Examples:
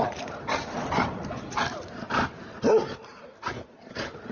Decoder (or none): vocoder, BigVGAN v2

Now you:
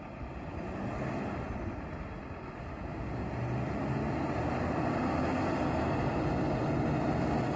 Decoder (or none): none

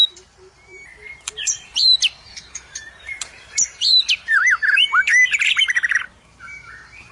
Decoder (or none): vocoder, BigVGAN v2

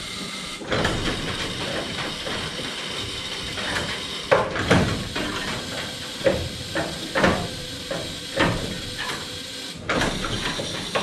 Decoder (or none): vocoder, BigVGAN v2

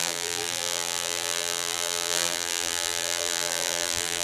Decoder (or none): vocoder, BigVGAN v2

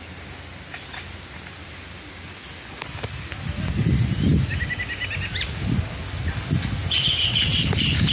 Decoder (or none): none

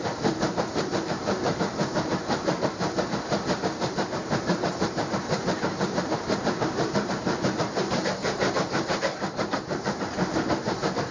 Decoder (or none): vocoder, BigVGAN v2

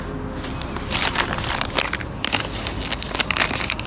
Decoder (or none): none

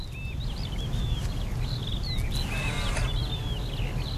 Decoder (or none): none